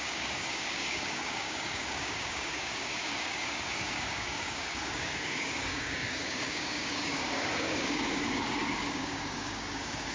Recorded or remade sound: remade